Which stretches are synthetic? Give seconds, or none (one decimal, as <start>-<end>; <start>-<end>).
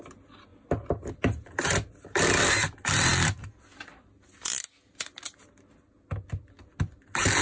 none